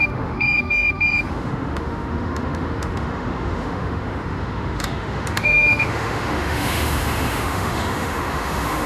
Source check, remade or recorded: remade